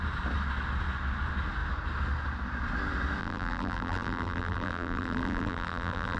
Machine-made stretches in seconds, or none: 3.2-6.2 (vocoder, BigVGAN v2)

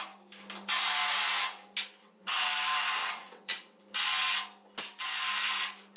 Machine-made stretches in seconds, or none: 2.0-2.5 (vocoder, WaveNeXt); 3.0-3.8